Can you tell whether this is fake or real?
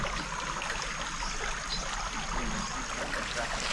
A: real